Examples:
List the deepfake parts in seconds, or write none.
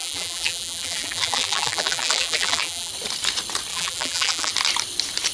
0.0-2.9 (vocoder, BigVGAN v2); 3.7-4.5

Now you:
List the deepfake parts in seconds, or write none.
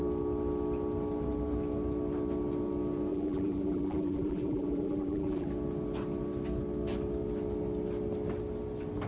3.1-5.5 (vocoder, BigVGAN v2)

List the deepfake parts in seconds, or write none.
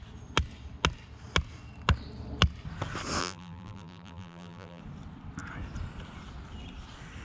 3.2-4.8 (vocoder, BigVGAN v2)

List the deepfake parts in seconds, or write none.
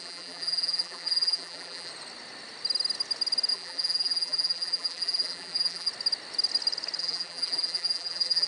0.0-1.9 (vocoder, BigVGAN v2); 3.5-5.9; 7.0-8.5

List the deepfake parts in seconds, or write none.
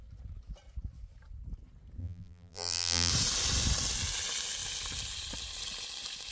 2.0-3.1 (vocoder, BigVGAN v2)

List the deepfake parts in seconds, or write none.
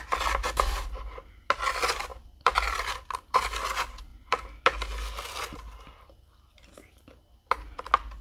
2.1-3.0 (vocoder, BigVGAN v2)